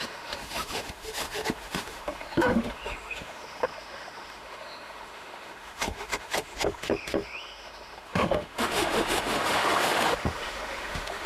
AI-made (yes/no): yes